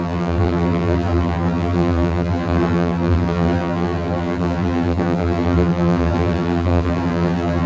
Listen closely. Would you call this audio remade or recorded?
remade